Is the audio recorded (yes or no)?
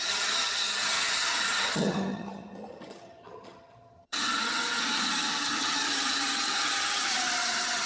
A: no